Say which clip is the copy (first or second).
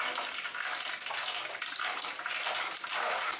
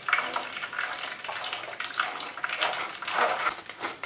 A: second